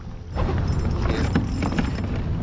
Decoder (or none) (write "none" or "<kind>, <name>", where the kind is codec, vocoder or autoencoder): none